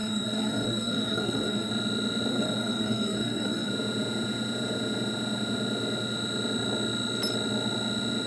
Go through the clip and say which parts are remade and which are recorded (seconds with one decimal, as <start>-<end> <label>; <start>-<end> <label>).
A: 0.0-1.7 remade; 1.7-2.3 recorded; 2.3-3.7 remade; 3.7-8.3 recorded